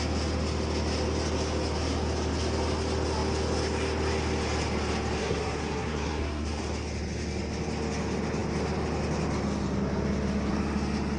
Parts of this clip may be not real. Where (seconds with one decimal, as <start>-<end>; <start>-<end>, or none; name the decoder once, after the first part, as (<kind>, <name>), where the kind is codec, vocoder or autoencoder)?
5.2-6.6 (codec, SNAC)